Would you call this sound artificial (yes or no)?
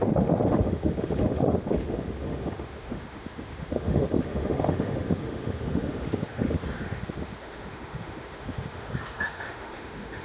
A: yes